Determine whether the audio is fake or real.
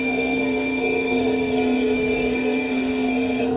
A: fake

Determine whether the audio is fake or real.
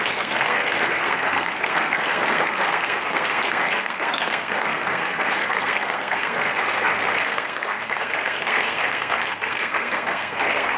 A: fake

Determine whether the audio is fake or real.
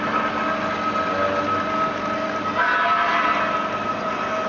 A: real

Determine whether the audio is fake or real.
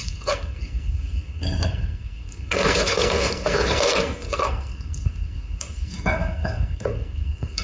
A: fake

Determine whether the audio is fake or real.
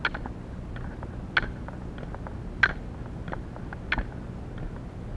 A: real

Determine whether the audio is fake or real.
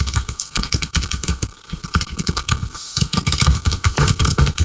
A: fake